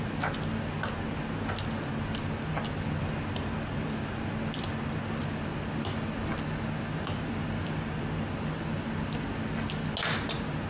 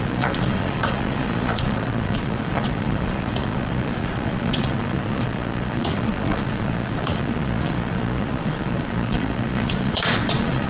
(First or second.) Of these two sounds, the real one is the first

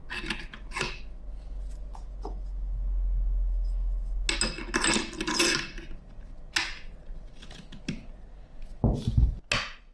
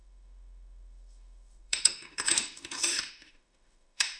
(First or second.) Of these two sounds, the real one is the first